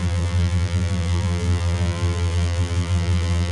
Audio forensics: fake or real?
fake